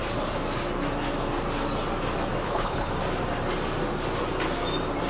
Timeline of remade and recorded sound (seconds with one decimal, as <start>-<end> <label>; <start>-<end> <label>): 0.0-2.4 recorded; 2.4-2.9 remade; 2.9-5.1 recorded